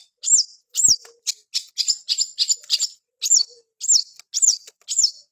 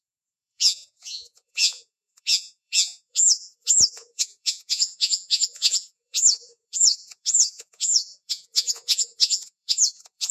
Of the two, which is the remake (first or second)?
second